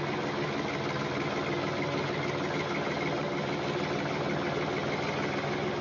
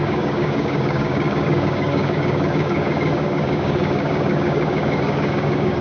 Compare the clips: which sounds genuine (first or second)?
first